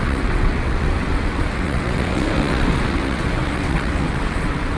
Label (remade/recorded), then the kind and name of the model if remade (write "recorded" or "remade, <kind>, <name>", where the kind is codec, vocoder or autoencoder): remade, vocoder, WaveNeXt